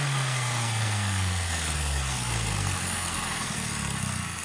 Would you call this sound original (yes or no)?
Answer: no